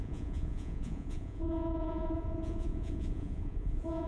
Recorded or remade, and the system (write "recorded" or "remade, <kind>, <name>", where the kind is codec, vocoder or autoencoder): remade, vocoder, Vocos